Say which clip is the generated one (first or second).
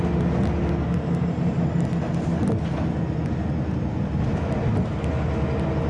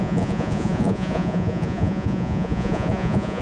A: second